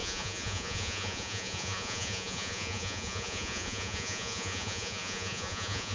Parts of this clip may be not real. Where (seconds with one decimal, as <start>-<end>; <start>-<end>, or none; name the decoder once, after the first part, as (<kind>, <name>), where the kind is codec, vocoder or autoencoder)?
0.0-5.9 (vocoder, Vocos)